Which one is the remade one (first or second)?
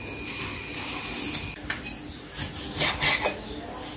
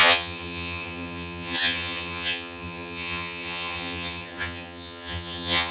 second